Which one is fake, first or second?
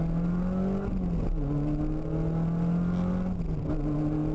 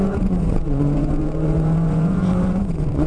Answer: second